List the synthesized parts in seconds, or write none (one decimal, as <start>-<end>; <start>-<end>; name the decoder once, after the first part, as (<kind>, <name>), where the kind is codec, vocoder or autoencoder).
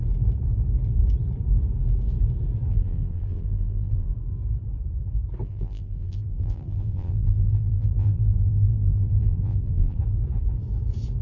2.7-4.1 (vocoder, BigVGAN v2); 5.4-10.0